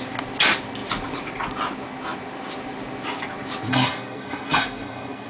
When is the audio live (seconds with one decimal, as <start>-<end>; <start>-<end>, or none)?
0.0-3.7